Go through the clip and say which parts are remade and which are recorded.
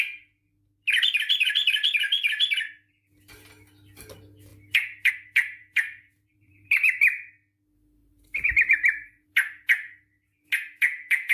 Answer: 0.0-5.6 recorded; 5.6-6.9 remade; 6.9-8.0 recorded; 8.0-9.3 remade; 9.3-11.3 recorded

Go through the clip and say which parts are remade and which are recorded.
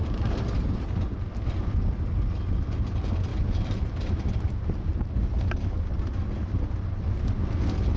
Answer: 0.0-0.5 remade; 0.5-3.3 recorded; 3.3-5.1 remade; 5.1-8.0 recorded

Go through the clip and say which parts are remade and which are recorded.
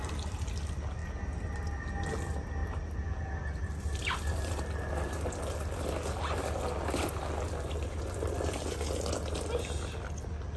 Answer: 0.0-2.6 recorded; 2.6-4.6 remade; 4.6-10.6 recorded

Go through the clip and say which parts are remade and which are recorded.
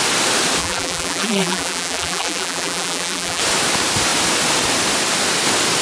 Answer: 0.0-0.6 recorded; 0.6-3.4 remade; 3.4-5.8 recorded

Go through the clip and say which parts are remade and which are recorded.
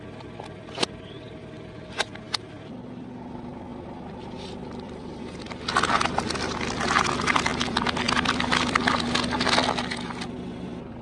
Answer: 0.0-11.0 remade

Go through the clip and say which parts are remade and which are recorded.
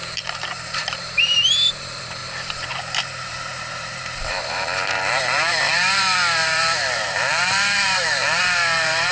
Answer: 0.0-9.1 remade